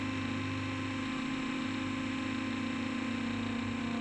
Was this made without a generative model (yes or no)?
yes